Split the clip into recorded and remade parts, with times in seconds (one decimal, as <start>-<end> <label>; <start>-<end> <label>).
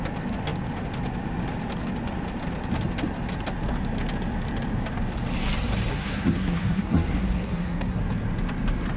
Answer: 0.0-5.9 recorded; 5.9-8.0 remade; 8.0-9.0 recorded